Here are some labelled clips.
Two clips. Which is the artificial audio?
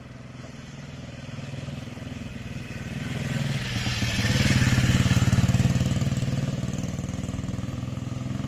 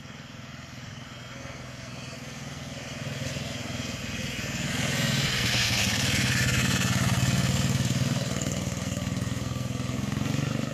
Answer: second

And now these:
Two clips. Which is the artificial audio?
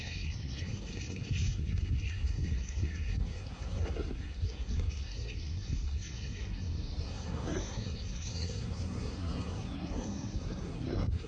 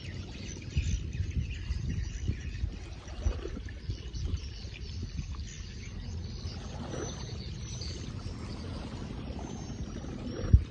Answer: first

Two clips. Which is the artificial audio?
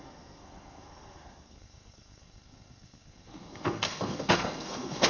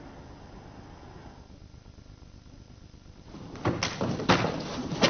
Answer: first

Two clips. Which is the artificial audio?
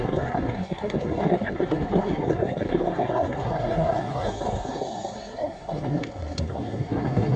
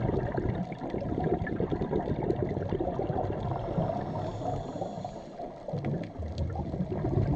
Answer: first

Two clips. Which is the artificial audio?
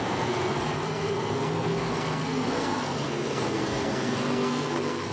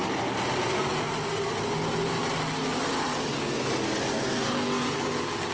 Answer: first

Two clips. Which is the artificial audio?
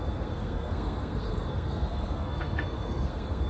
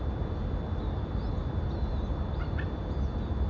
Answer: first